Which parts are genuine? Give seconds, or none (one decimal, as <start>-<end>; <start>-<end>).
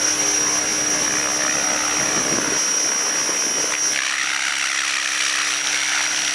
0.0-6.3